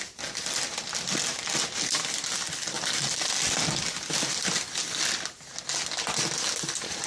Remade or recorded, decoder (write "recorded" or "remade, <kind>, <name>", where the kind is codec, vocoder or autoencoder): recorded